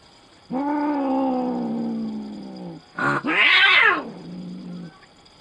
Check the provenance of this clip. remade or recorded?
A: recorded